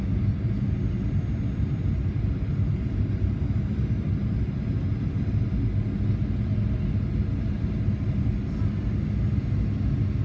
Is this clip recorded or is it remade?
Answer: recorded